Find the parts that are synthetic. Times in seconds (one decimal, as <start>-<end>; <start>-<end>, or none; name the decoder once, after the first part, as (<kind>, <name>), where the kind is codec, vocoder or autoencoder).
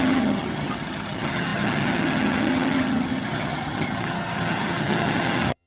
0.0-5.7 (vocoder, HiFi-GAN)